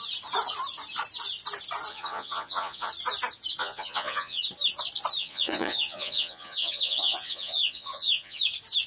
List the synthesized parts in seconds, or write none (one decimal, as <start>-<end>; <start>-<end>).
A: 1.9-2.9; 3.6-4.4; 5.2-8.4